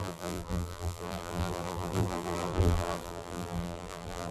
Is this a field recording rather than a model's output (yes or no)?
no